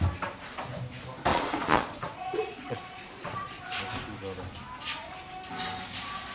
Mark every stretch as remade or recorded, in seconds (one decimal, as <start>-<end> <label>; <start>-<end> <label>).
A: 0.0-1.3 recorded; 1.3-3.8 remade; 3.8-6.3 recorded